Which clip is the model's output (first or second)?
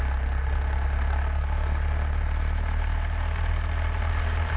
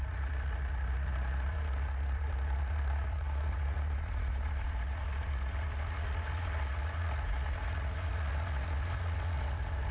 second